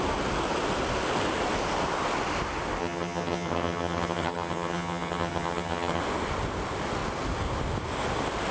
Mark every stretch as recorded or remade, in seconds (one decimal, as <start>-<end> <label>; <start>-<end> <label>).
0.0-2.8 recorded; 2.8-6.0 remade; 6.0-8.5 recorded